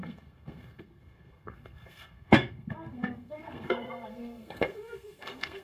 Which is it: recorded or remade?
remade